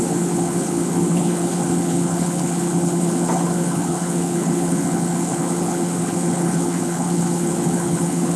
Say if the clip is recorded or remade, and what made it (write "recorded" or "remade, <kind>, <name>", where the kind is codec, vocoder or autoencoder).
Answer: remade, codec, HILCodec